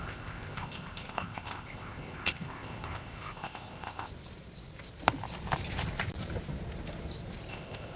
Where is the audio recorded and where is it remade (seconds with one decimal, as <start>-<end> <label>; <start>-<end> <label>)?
0.0-4.1 remade; 4.1-7.5 recorded; 7.5-8.0 remade